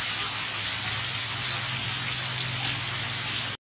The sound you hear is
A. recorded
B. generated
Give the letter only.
A